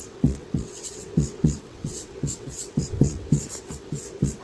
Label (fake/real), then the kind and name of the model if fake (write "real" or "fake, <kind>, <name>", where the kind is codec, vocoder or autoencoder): fake, vocoder, WaveNeXt